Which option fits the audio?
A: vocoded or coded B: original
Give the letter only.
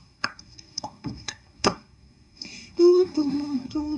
A